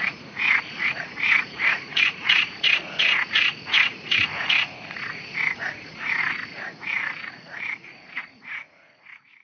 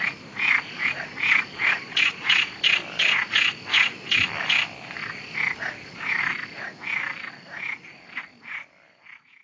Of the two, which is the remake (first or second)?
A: first